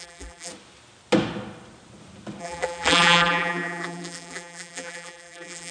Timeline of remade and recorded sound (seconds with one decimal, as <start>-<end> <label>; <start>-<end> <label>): 0.0-0.5 remade; 0.5-2.4 recorded; 2.4-5.7 remade